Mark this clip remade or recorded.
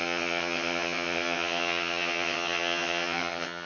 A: remade